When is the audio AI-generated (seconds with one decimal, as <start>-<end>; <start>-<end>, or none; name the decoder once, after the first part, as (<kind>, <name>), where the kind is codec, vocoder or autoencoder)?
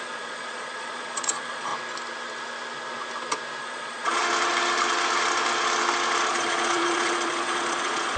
0.0-1.7 (vocoder, Vocos); 3.6-4.2; 6.3-8.2